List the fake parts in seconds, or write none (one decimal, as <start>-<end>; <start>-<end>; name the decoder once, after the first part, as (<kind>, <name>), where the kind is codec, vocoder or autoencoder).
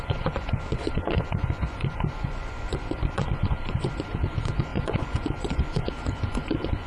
0.0-6.9 (vocoder, Vocos)